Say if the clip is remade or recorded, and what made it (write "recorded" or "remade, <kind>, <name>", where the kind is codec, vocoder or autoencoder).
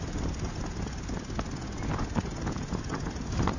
recorded